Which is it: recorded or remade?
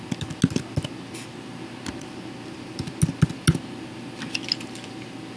recorded